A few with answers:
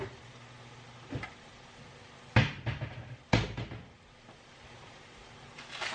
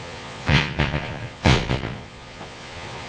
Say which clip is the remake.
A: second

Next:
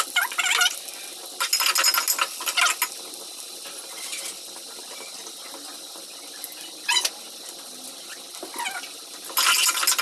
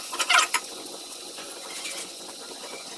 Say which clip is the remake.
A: second